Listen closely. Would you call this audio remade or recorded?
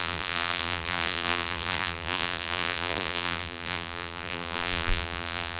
remade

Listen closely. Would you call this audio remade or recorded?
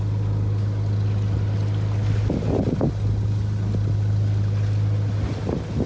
recorded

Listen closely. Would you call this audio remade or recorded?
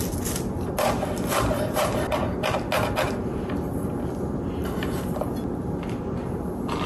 recorded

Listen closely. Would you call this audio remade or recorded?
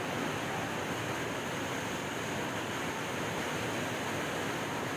recorded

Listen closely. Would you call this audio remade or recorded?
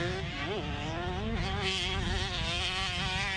recorded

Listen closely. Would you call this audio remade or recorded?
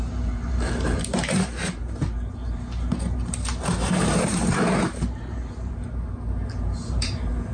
remade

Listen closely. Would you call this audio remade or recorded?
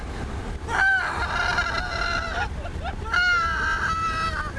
recorded